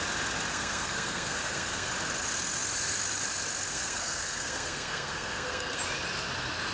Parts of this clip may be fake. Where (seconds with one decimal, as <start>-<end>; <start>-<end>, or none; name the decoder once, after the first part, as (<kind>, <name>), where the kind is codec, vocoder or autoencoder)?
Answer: 0.5-1.9 (codec, SNAC); 3.7-5.8